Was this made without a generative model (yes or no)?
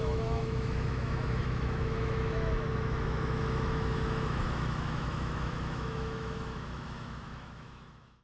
no